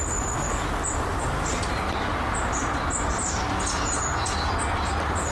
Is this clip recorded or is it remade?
recorded